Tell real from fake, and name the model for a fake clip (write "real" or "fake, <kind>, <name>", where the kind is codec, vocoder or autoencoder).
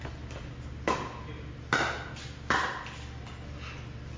real